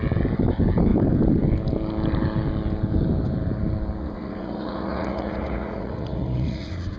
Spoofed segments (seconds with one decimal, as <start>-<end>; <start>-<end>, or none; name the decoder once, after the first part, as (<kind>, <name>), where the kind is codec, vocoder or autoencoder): 4.0-7.0 (vocoder, Vocos)